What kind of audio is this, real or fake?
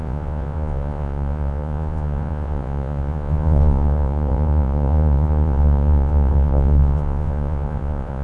fake